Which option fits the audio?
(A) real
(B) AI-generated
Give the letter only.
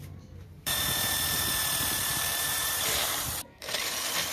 B